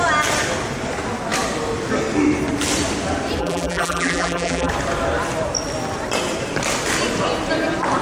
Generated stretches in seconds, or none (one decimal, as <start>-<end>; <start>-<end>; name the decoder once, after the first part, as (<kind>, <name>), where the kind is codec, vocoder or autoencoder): 3.4-4.7 (vocoder, BigVGAN v2)